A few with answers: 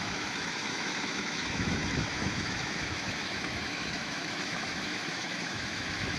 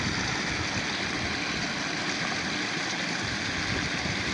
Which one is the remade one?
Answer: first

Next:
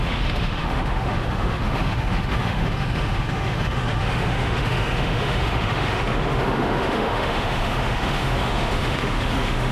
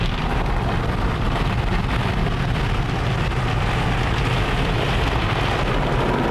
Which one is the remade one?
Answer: first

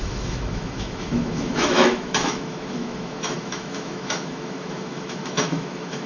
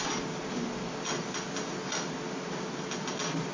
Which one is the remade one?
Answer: first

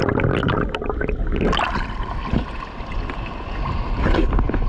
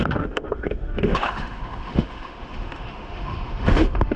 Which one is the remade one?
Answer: second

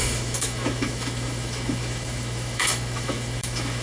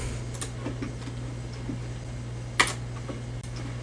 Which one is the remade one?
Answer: first